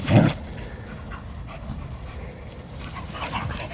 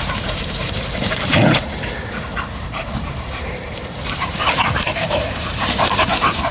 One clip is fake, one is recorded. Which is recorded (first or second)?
first